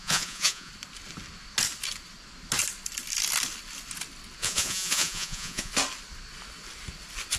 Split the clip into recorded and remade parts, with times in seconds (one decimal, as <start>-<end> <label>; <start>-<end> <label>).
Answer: 0.0-0.7 remade; 0.7-4.4 recorded; 4.4-5.7 remade; 5.7-7.4 recorded